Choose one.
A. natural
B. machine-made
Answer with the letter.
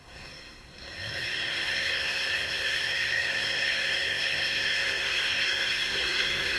B